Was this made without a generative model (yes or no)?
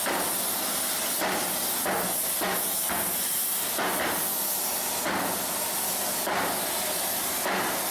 yes